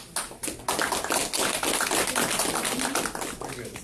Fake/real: real